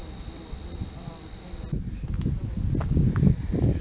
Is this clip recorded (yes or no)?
yes